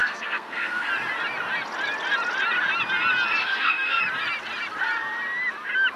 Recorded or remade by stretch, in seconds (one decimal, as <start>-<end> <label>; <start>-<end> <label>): 0.0-0.9 remade; 0.9-3.4 recorded; 3.4-4.0 remade; 4.0-6.0 recorded